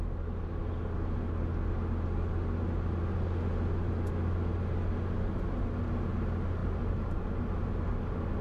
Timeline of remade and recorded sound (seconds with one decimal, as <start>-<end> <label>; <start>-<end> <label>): 0.0-6.6 recorded; 6.6-7.4 remade; 7.4-8.4 recorded